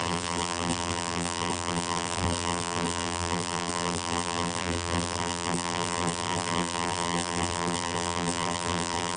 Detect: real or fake fake